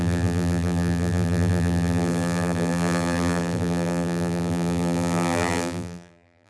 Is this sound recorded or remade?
remade